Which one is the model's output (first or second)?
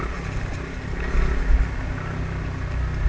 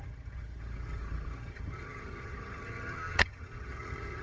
second